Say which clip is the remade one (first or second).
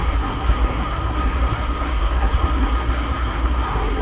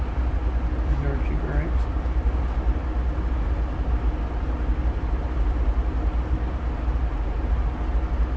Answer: first